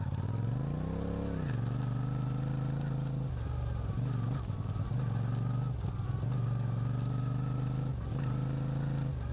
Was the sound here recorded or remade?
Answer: recorded